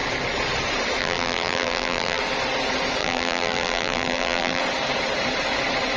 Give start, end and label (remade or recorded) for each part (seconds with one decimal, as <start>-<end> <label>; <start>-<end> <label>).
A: 0.0-1.0 recorded; 1.0-2.2 remade; 2.2-3.0 recorded; 3.0-4.6 remade; 4.6-6.0 recorded